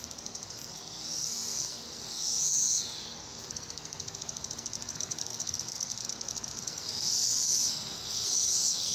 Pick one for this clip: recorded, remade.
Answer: remade